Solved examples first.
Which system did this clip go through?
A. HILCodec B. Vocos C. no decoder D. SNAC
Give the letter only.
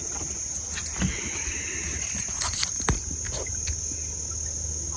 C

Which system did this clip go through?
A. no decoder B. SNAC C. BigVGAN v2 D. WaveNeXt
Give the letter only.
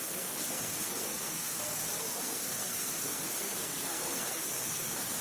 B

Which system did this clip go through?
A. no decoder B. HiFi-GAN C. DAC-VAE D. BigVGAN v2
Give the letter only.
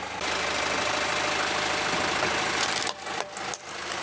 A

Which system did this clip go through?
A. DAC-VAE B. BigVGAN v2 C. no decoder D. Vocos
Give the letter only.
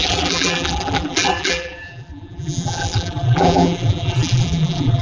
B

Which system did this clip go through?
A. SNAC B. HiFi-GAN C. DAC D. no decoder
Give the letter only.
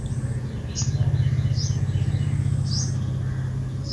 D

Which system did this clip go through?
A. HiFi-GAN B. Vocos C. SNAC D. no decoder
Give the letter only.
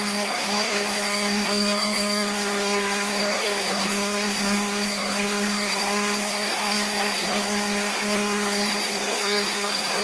C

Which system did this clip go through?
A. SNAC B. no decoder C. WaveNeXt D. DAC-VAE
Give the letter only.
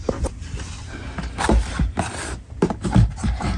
B